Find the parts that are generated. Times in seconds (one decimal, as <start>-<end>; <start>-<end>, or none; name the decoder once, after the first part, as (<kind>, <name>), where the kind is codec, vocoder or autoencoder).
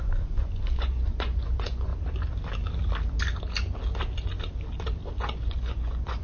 0.0-1.9 (vocoder, Vocos); 5.2-6.2